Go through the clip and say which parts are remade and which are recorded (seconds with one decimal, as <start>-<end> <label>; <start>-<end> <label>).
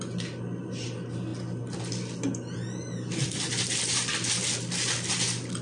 0.0-5.6 recorded